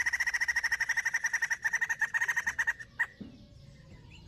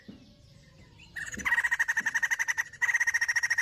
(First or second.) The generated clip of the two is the second